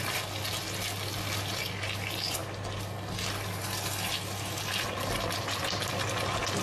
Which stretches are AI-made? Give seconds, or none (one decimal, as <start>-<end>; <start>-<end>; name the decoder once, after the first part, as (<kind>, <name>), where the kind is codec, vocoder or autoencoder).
none